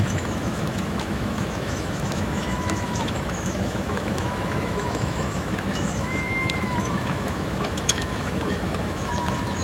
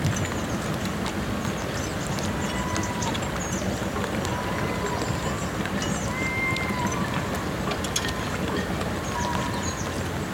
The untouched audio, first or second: second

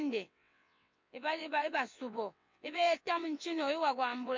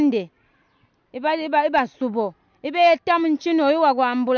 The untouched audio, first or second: second